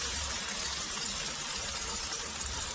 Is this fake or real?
fake